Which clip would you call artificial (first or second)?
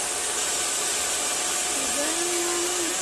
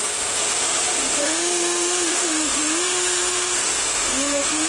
second